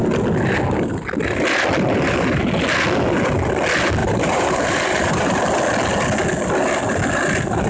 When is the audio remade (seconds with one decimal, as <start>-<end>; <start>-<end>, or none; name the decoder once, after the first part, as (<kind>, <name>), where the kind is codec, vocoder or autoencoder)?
4.0-5.4 (vocoder, BigVGAN v2)